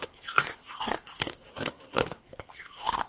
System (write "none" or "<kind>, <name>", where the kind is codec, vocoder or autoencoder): codec, SNAC